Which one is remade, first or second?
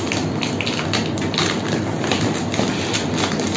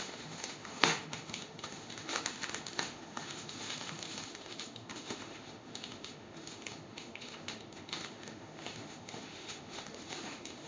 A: second